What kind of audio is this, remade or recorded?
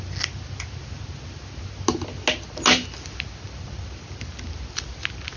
recorded